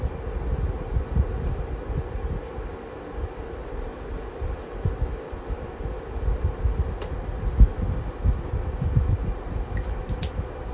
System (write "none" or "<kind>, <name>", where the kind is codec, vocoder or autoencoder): none